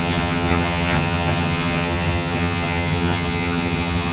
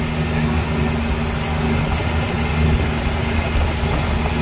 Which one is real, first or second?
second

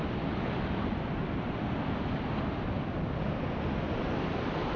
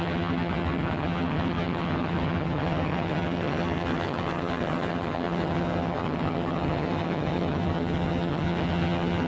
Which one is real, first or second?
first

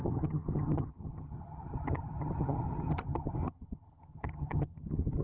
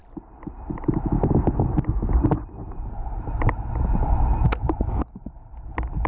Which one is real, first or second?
second